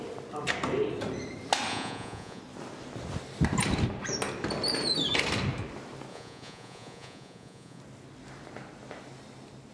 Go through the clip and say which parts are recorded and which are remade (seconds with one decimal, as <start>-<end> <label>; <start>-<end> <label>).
0.0-1.7 recorded; 1.7-2.4 remade; 2.4-6.1 recorded; 6.1-7.8 remade; 7.8-9.7 recorded